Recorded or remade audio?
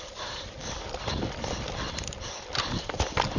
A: remade